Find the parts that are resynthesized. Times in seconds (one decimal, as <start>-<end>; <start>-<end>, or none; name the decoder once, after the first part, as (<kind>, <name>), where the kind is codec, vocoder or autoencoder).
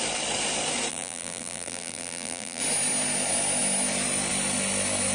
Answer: 0.9-2.6 (vocoder, BigVGAN v2)